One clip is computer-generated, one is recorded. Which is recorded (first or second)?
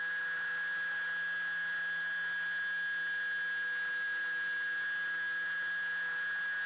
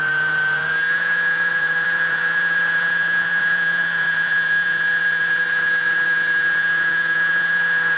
first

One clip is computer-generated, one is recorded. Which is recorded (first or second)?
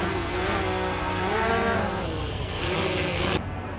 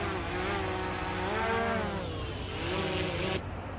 second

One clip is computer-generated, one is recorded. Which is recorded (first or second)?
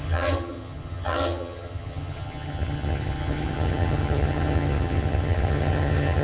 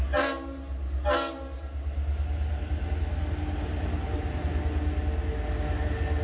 second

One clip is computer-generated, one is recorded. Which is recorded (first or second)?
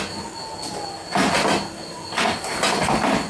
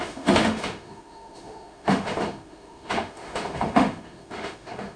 first